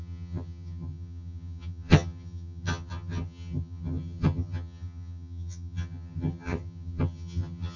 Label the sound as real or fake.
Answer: fake